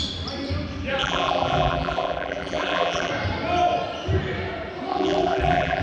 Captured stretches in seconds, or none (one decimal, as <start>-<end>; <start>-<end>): 0.0-1.0; 3.1-4.9

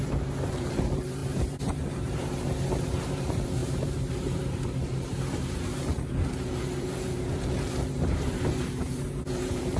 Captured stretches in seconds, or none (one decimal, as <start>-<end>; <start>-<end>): none

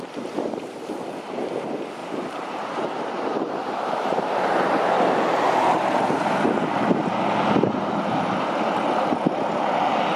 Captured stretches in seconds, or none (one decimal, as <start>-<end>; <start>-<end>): 0.0-2.0; 4.9-10.2

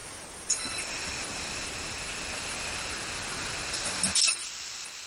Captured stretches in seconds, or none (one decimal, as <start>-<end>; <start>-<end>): 0.0-5.1

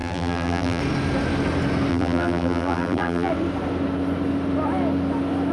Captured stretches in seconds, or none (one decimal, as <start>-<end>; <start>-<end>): 0.8-1.9; 3.3-5.5